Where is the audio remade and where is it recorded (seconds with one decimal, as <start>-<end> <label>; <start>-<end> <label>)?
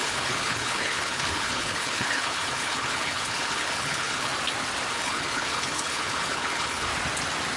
0.0-4.3 remade; 4.3-4.9 recorded; 4.9-6.9 remade; 6.9-7.6 recorded